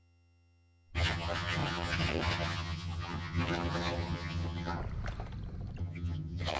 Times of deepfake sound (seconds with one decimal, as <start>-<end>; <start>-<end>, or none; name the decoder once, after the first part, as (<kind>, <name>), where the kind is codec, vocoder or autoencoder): 0.0-4.8 (vocoder, HiFi-GAN); 5.8-6.6